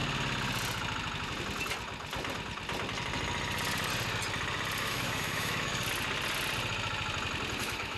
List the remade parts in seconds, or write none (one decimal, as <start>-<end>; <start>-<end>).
4.8-5.7; 7.6-8.0